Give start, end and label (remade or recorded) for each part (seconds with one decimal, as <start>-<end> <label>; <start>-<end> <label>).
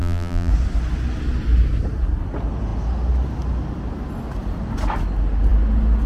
0.0-0.5 remade; 0.5-6.1 recorded